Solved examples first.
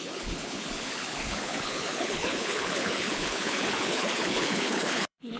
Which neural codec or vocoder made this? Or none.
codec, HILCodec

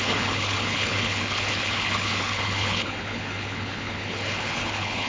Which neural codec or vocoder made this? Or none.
codec, HILCodec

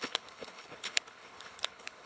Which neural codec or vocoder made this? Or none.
codec, HILCodec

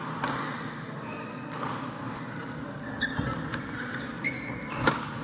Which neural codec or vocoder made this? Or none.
none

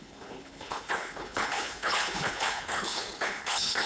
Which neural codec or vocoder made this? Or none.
codec, HILCodec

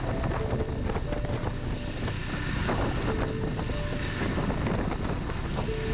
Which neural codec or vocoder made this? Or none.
none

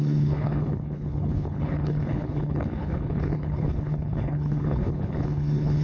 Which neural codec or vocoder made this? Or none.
codec, HILCodec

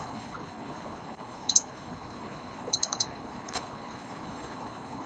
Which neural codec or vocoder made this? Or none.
codec, HILCodec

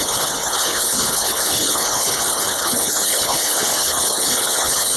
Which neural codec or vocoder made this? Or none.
codec, HILCodec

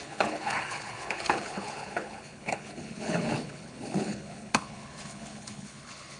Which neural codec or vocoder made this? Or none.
codec, HILCodec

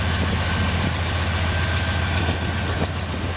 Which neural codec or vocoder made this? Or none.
none